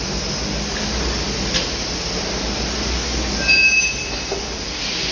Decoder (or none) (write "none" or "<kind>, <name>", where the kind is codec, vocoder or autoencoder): none